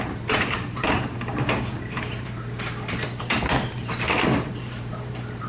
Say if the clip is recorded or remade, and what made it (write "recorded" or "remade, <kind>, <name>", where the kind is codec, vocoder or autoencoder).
remade, vocoder, BigVGAN v2